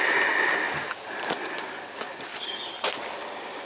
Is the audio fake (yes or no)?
no